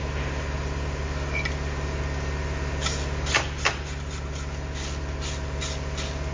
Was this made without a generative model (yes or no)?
yes